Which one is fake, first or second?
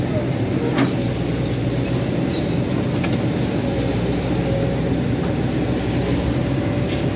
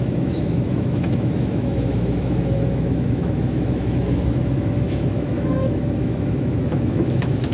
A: second